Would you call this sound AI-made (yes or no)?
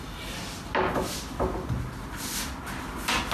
no